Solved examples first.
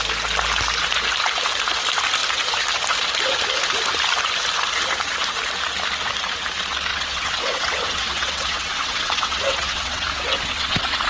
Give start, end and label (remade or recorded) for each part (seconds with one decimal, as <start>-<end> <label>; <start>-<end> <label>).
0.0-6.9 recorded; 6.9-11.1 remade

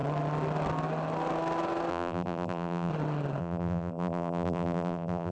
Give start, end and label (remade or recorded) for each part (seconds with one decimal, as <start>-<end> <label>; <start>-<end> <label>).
0.0-1.9 recorded; 1.9-2.9 remade; 2.9-3.4 recorded; 3.4-5.3 remade

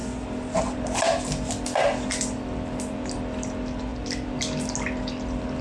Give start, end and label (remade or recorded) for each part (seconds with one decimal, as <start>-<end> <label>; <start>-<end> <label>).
0.0-5.6 recorded

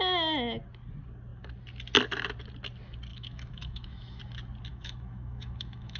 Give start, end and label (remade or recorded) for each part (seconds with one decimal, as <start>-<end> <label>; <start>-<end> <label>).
0.0-3.1 recorded; 3.1-4.2 remade; 4.2-4.7 recorded; 4.7-6.0 remade